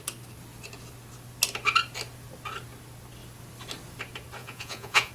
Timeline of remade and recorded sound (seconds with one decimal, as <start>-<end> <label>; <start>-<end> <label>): 0.0-4.4 recorded; 4.4-5.1 remade